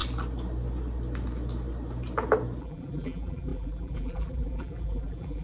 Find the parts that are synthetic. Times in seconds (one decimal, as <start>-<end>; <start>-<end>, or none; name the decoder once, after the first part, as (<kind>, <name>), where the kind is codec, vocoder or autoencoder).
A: 2.6-5.4 (vocoder, BigVGAN v2)